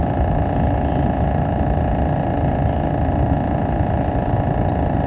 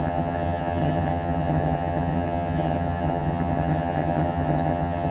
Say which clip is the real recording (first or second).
first